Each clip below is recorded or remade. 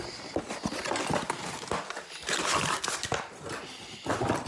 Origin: recorded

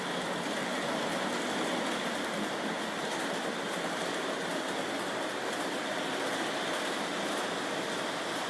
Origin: recorded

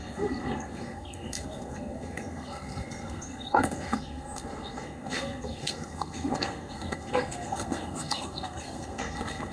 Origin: remade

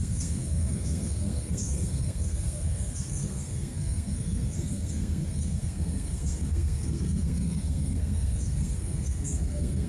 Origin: remade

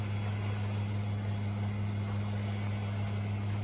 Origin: recorded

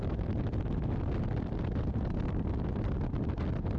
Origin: recorded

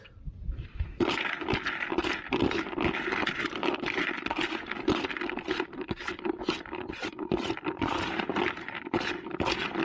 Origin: recorded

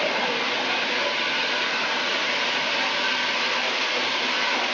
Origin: recorded